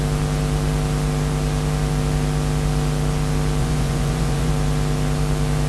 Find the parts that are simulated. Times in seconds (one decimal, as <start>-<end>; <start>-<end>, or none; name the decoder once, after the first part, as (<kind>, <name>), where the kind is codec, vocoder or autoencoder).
3.6-4.5 (vocoder, Vocos)